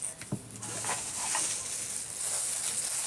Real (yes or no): yes